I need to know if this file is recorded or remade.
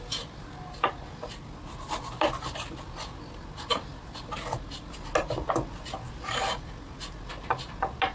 recorded